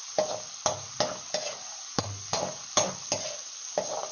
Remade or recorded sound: recorded